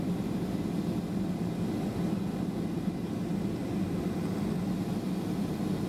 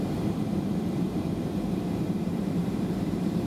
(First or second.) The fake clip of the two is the second